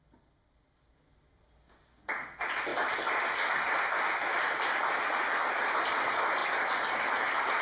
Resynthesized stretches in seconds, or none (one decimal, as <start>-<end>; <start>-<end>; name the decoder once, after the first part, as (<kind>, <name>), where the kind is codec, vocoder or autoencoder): none

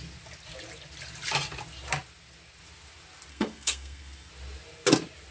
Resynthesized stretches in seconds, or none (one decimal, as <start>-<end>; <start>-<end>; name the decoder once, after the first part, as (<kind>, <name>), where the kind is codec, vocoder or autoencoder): 3.3-4.3 (codec, SNAC)